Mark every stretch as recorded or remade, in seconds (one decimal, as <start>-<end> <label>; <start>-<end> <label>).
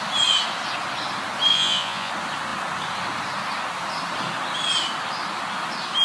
0.0-1.5 recorded; 1.5-2.1 remade; 2.1-6.0 recorded